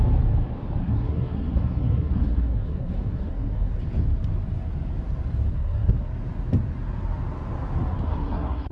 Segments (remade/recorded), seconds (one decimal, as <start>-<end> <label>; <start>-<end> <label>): 0.0-0.8 recorded; 0.8-3.8 remade; 3.8-5.5 recorded; 5.5-6.1 remade; 6.1-8.1 recorded; 8.1-8.7 remade